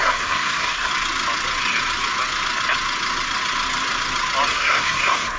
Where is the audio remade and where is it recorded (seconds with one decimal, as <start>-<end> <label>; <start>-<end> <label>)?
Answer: 0.0-0.9 remade; 0.9-4.5 recorded; 4.5-5.4 remade